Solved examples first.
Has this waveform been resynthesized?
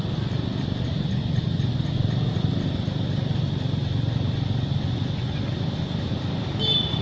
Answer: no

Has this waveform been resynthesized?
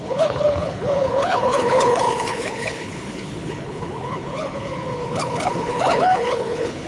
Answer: yes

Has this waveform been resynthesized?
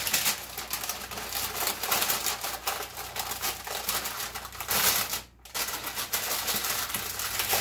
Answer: no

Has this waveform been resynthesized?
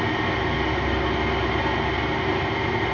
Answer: no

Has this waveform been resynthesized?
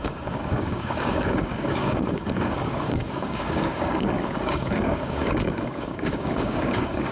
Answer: yes